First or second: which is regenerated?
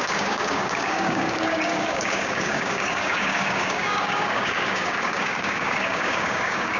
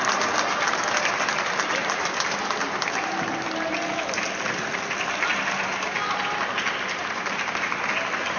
first